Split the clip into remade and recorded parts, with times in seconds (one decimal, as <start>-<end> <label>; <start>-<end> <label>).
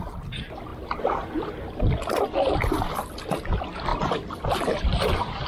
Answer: 0.0-0.7 recorded; 0.7-1.5 remade; 1.5-5.5 recorded